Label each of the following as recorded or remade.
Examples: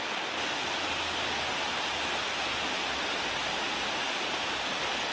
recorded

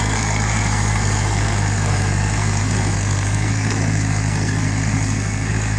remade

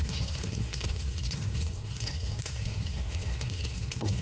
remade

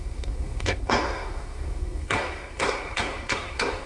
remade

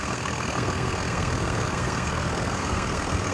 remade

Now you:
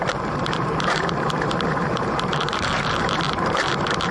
remade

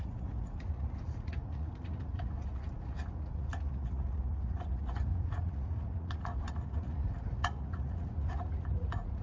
remade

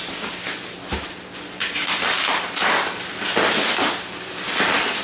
recorded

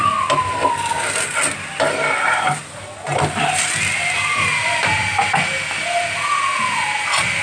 recorded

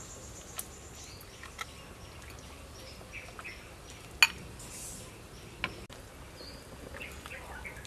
recorded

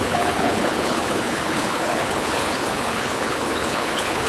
remade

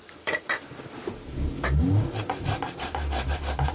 recorded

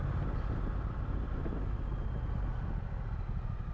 recorded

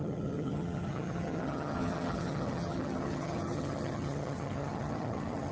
remade